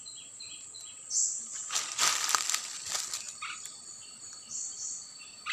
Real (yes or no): no